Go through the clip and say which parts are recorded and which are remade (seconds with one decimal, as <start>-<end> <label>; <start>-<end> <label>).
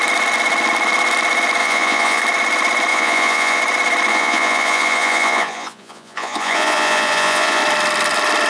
0.0-1.6 recorded; 1.6-2.2 remade; 2.2-2.9 recorded; 2.9-3.6 remade; 3.6-4.1 recorded; 4.1-7.6 remade; 7.6-8.5 recorded